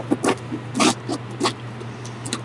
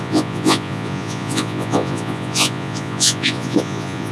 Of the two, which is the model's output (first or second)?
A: second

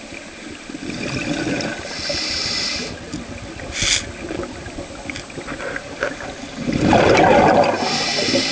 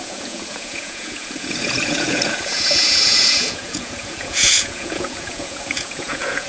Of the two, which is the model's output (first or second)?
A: second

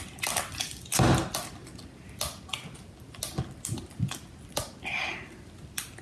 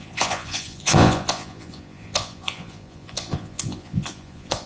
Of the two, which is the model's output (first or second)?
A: second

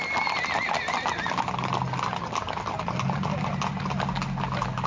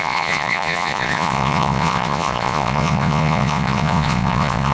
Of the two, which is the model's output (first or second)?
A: second